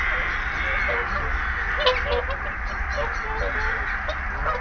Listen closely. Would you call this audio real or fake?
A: real